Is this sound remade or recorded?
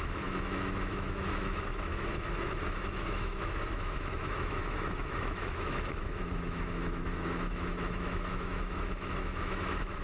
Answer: remade